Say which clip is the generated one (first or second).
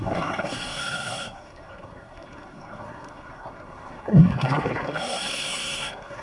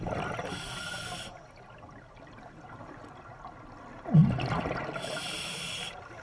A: first